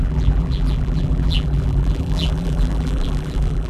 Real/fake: fake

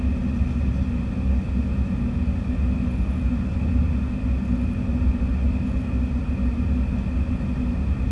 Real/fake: real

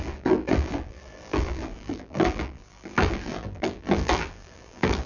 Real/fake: fake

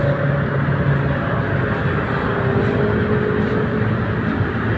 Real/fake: real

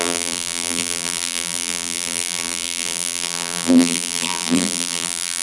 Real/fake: fake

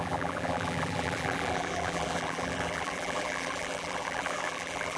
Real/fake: fake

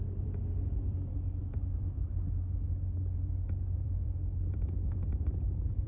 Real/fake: fake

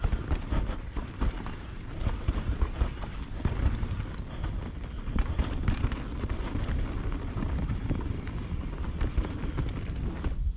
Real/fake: fake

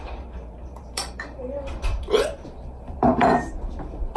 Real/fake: fake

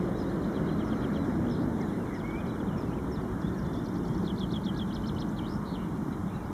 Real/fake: fake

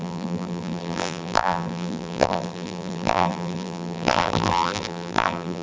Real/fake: fake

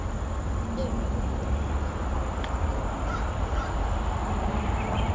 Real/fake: real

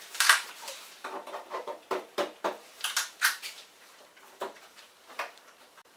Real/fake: fake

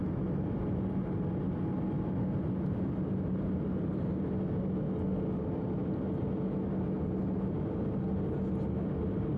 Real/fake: real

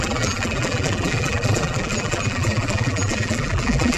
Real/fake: fake